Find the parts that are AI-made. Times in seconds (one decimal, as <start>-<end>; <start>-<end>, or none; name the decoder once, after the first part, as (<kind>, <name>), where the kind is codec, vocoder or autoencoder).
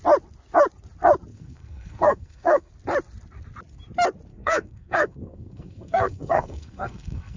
1.3-2.7 (codec, SNAC); 4.3-7.4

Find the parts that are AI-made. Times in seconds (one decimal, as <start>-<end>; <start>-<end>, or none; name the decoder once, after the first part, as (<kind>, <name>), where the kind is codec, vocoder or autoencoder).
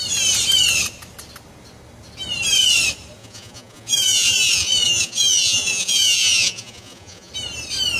3.2-7.3 (vocoder, Vocos)